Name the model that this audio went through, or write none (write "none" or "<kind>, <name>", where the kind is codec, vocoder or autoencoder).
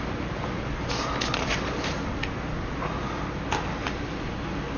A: none